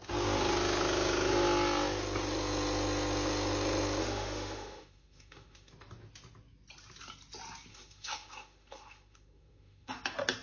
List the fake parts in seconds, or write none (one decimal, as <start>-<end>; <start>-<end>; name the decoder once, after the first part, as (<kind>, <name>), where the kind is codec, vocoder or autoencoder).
4.0-5.7 (autoencoder, DAC-VAE); 7.7-9.9